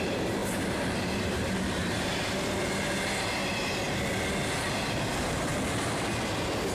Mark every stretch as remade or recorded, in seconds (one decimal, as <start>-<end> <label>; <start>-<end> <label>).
0.0-3.4 remade; 3.4-4.8 recorded; 4.8-5.5 remade; 5.5-6.7 recorded